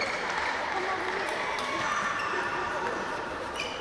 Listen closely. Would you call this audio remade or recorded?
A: remade